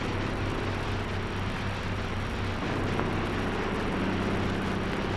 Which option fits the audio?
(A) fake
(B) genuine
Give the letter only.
B